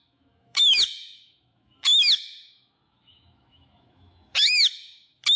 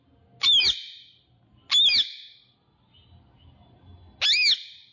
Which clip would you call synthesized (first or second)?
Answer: first